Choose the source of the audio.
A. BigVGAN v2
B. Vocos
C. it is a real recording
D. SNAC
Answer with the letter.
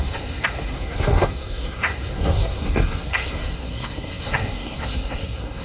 D